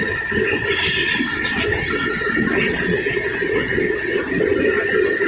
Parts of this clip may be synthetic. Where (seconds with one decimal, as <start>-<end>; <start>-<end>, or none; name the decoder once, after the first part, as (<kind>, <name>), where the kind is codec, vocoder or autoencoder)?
1.0-4.2 (vocoder, WaveNeXt)

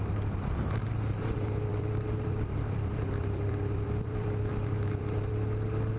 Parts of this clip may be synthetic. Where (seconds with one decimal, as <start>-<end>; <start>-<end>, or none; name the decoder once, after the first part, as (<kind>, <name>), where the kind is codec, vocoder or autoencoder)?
1.7-5.3 (vocoder, BigVGAN v2)

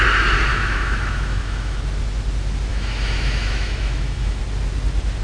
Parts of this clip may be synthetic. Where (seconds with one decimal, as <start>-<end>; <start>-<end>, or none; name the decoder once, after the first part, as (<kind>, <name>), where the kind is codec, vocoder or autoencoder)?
0.5-1.8 (autoencoder, DAC-VAE); 2.7-4.4

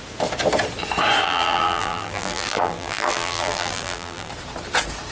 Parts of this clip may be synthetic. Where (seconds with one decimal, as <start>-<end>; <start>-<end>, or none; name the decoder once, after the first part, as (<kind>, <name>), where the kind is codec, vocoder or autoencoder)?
1.2-4.3 (vocoder, BigVGAN v2)